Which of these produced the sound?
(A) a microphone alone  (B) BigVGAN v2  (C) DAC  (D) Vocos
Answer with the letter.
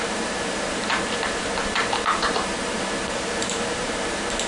B